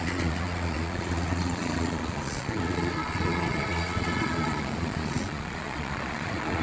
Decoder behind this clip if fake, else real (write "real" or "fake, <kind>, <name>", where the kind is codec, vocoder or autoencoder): fake, vocoder, Vocos